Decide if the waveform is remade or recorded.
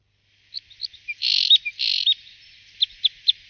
recorded